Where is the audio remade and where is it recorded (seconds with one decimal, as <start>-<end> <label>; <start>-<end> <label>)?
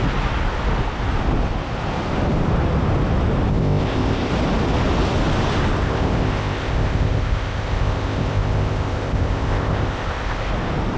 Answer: 0.0-3.5 recorded; 3.5-4.3 remade; 4.3-5.8 recorded; 5.8-10.5 remade; 10.5-11.0 recorded